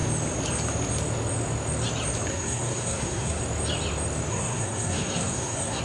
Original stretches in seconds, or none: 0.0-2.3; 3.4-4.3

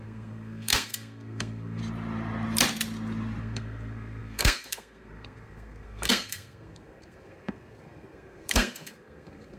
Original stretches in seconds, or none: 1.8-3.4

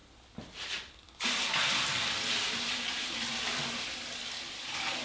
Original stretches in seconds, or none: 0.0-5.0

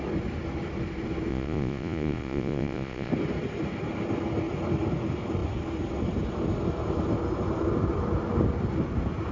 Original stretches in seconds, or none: 0.0-1.3; 3.1-9.3

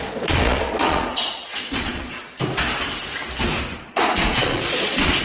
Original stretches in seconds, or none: 2.2-3.9

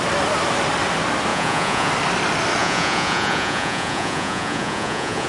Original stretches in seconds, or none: 0.0-1.3; 1.9-2.6

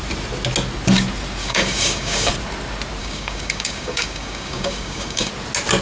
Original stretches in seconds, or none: 0.0-1.4; 2.3-3.0; 5.3-5.8